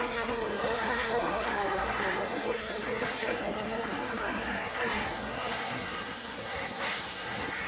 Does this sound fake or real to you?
fake